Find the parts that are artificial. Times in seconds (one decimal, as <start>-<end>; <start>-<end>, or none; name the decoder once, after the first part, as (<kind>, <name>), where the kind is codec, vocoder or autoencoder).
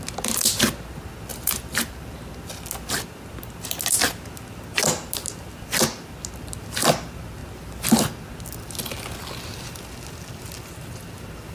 1.3-2.2 (vocoder, BigVGAN v2)